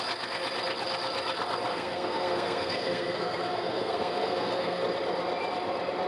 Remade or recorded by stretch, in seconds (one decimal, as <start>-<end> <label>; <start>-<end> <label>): 0.0-1.7 recorded; 1.7-4.8 remade; 4.8-6.1 recorded